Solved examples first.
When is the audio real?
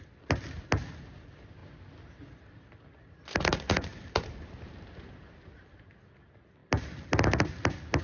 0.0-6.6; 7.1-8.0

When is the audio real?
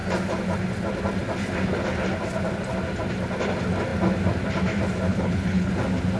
0.0-5.1; 5.7-6.2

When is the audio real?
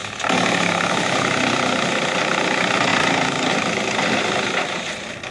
0.0-0.9; 2.9-3.5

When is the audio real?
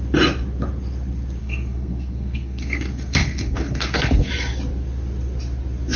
0.0-1.4; 4.3-6.0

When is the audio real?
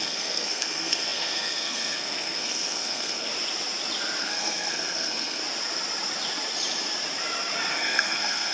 3.3-4.2; 5.4-7.7